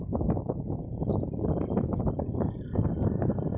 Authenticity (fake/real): real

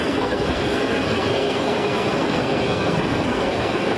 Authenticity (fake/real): fake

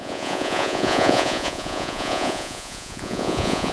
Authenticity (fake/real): fake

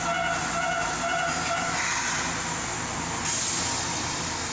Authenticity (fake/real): real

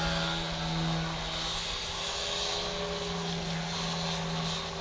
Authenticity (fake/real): real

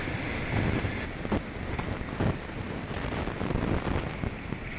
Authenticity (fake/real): real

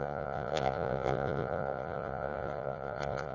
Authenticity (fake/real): fake